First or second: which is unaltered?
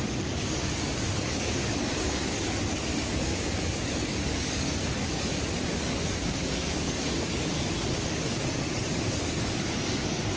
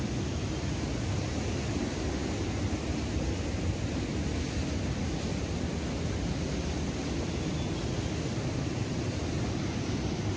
second